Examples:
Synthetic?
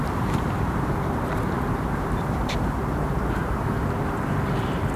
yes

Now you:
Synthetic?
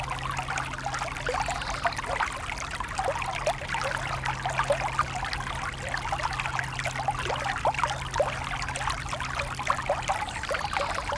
no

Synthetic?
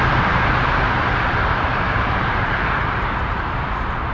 yes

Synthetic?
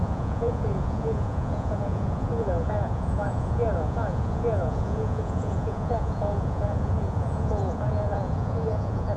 yes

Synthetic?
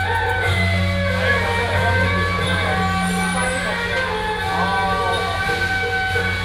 no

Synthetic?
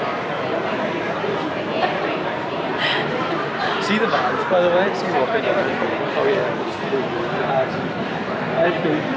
yes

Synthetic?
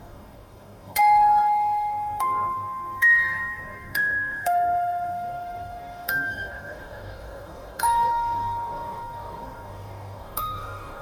yes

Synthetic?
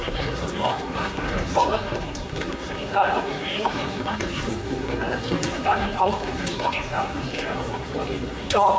yes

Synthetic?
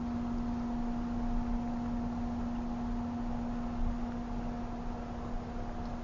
no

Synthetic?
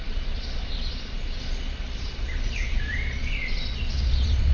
yes